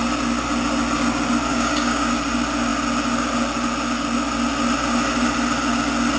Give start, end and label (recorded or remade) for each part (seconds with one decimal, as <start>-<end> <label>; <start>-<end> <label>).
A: 0.0-1.5 recorded; 1.5-2.1 remade; 2.1-6.2 recorded